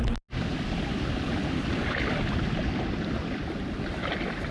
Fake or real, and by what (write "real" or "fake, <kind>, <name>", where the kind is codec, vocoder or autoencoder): real